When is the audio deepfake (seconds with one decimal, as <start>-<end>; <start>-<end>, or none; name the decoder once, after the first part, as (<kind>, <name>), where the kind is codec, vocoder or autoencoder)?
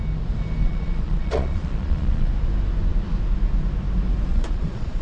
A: 0.6-2.3 (vocoder, Vocos); 4.3-5.0